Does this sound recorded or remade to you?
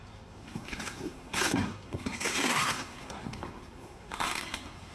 remade